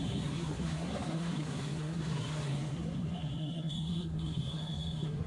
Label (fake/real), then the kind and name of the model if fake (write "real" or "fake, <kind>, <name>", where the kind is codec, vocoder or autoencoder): fake, codec, SNAC